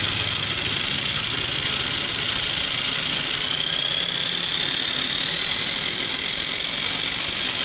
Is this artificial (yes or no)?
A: no